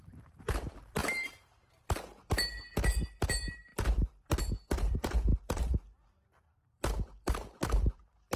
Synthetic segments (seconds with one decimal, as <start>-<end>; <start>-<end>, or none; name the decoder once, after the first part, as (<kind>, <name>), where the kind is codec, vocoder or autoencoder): 0.0-8.4 (vocoder, BigVGAN v2)